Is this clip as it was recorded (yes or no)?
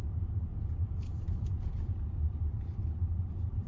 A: no